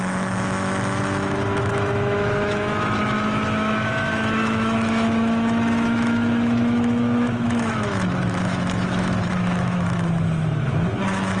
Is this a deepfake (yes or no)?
yes